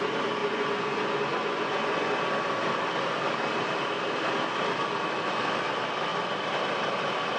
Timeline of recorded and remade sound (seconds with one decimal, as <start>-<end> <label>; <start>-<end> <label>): 0.0-0.4 recorded; 0.4-2.2 remade; 2.2-7.4 recorded